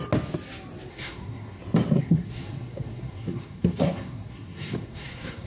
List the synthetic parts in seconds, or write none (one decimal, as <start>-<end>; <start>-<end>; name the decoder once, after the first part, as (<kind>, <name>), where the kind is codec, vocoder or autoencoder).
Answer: 0.9-1.6 (codec, SNAC); 2.0-5.5